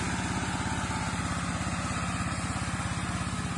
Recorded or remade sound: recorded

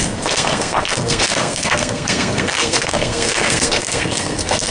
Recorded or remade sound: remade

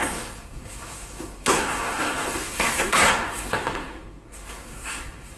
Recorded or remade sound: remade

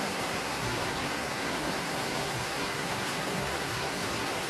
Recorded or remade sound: remade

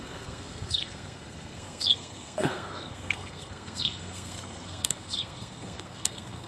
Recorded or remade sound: remade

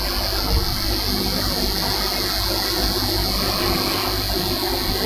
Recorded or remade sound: recorded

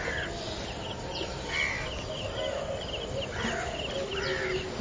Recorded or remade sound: recorded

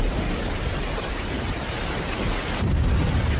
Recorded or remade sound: recorded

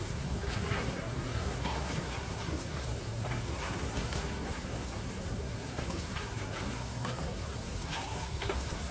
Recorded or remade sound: remade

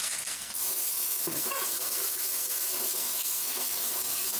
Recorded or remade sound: remade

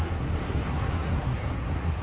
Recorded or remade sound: remade